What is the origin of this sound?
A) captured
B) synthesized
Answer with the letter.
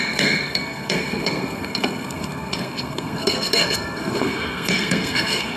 B